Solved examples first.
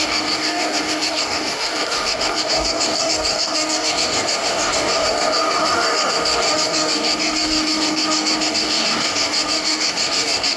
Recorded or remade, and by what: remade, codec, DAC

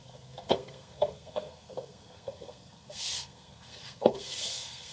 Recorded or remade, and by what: remade, codec, SNAC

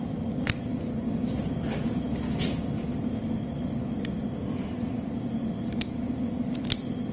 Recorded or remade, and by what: recorded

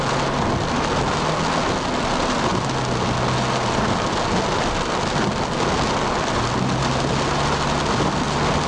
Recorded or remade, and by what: recorded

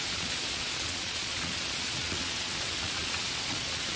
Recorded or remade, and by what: remade, vocoder, Vocos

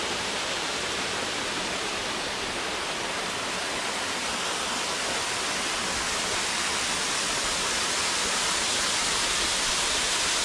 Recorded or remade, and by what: recorded